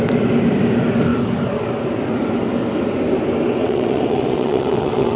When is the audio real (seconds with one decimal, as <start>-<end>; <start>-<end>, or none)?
0.0-3.6